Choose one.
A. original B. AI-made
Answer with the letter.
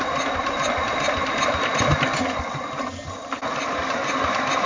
A